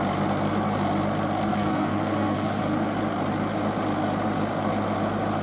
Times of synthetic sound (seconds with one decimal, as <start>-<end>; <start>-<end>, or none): 1.5-2.6